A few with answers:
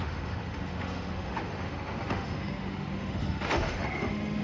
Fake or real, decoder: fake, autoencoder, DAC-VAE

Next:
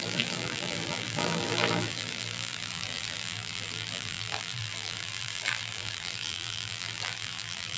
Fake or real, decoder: fake, vocoder, BigVGAN v2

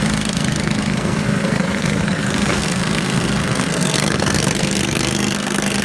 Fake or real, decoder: fake, codec, SNAC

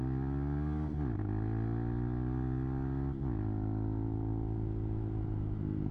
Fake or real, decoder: real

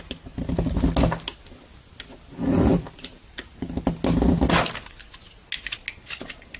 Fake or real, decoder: real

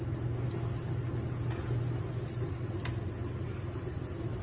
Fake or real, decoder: real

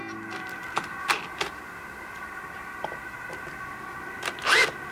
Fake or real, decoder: real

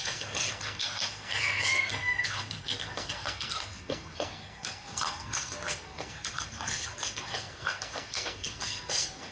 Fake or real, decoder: fake, codec, SNAC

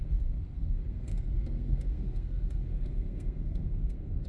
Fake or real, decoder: fake, codec, SNAC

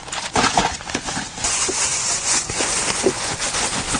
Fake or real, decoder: fake, vocoder, Vocos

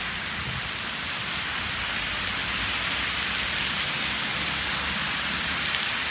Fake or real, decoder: real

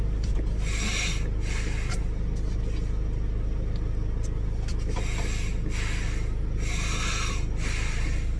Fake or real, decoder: real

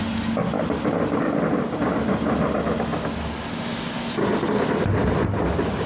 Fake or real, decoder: real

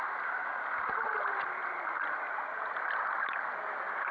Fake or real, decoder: real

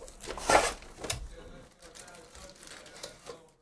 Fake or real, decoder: real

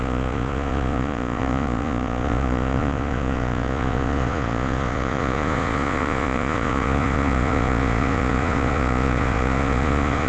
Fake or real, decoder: fake, vocoder, Vocos